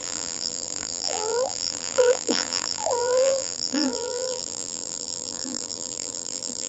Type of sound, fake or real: fake